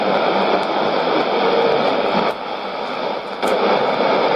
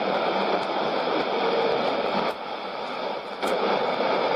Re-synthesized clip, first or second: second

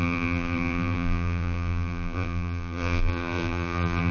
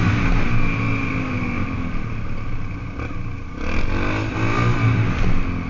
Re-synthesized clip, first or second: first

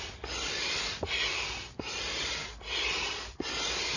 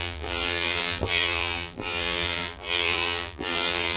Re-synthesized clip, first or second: second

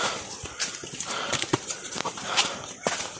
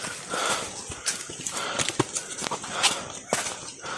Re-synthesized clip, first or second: first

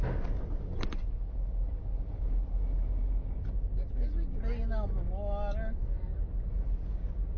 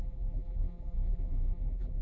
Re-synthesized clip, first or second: second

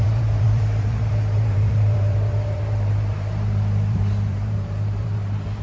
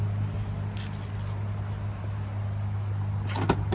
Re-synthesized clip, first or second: first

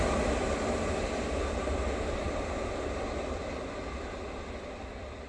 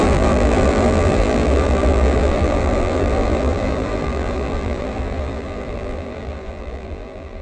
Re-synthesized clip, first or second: second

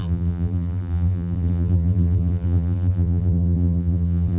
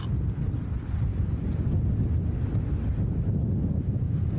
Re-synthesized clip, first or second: first